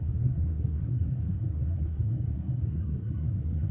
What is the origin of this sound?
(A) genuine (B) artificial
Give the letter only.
B